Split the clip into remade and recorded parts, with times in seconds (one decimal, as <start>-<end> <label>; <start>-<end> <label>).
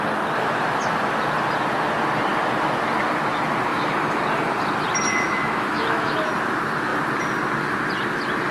0.0-3.7 recorded; 3.7-4.2 remade; 4.2-5.1 recorded; 5.1-6.3 remade; 6.3-8.5 recorded